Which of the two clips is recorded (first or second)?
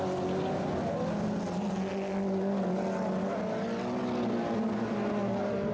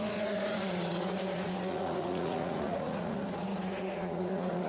first